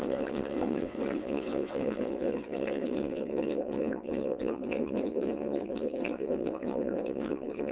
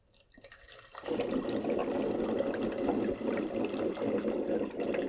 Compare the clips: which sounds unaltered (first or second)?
second